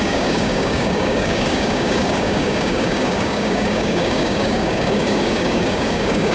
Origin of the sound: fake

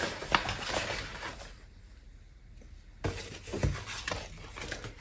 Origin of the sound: real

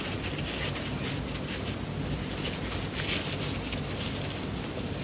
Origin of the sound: real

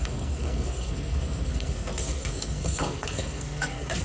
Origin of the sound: fake